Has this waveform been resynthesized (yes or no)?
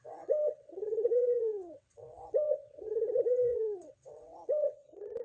yes